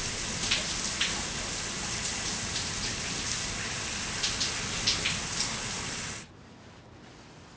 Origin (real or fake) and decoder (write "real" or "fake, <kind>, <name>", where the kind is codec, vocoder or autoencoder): real